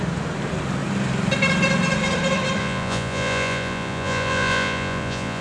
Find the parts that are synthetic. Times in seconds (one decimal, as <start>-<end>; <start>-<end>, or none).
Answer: 2.6-5.4